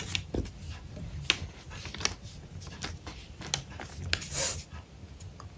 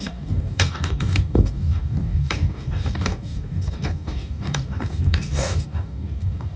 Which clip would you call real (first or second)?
first